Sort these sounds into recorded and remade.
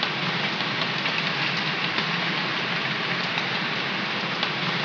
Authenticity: recorded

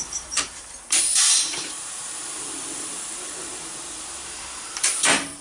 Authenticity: remade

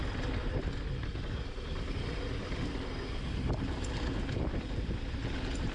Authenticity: recorded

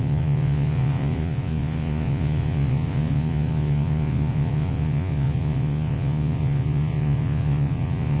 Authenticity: remade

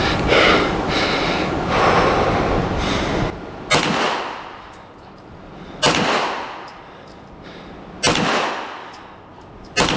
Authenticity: recorded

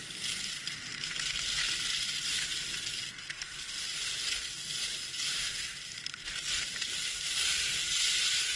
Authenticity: recorded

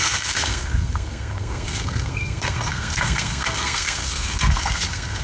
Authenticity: remade